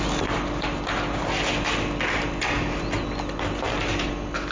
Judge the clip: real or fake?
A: real